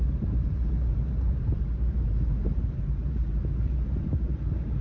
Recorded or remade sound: remade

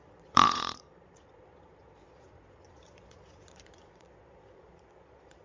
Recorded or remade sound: remade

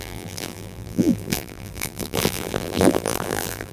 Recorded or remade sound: remade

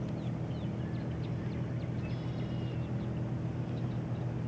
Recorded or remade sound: recorded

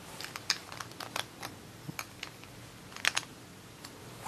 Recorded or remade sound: recorded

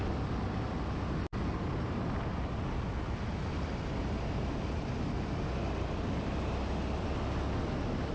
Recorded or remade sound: recorded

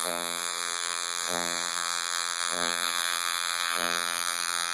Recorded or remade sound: remade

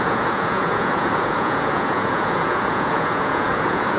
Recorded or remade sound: remade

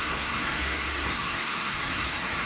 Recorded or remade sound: remade